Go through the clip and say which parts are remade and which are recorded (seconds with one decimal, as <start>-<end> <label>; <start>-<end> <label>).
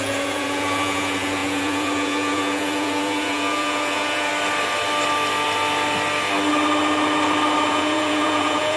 0.0-4.3 remade; 4.3-7.7 recorded; 7.7-8.8 remade